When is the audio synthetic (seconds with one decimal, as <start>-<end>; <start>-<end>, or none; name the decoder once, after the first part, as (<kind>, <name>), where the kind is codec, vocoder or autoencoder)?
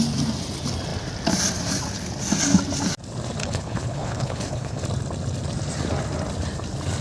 3.4-4.8 (codec, HILCodec)